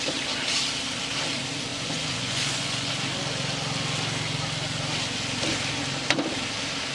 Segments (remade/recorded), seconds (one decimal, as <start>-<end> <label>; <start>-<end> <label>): 0.0-1.7 recorded; 1.7-2.9 remade; 2.9-6.9 recorded